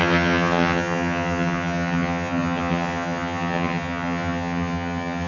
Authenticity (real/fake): fake